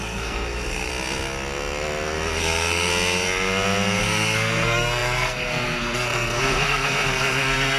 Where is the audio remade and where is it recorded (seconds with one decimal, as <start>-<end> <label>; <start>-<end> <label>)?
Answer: 0.0-0.9 remade; 0.9-2.4 recorded; 2.4-2.9 remade; 2.9-4.0 recorded; 4.0-7.8 remade